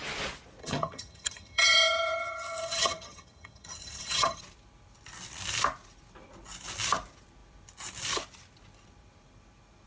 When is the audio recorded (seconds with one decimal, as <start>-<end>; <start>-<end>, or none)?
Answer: 0.0-0.6; 4.4-9.9